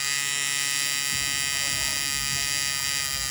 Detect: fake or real real